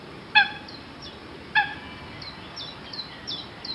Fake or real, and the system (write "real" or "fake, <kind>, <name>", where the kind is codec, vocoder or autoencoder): real